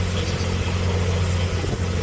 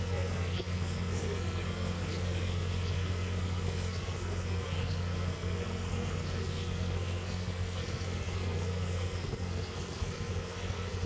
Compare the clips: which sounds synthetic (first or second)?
second